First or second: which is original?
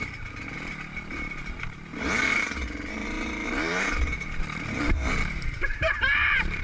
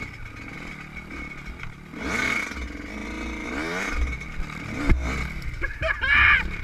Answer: second